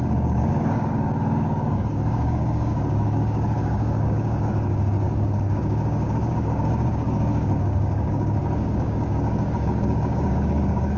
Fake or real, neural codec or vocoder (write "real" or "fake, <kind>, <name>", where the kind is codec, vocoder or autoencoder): fake, codec, DAC